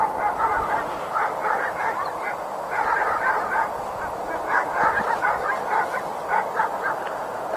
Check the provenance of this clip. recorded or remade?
recorded